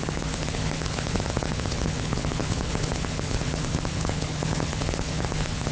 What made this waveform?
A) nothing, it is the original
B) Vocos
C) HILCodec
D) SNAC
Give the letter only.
C